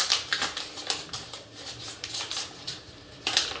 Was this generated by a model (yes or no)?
yes